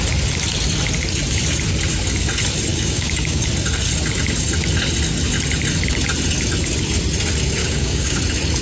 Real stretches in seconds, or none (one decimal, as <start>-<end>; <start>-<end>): 0.0-2.7; 3.4-7.6; 8.2-8.6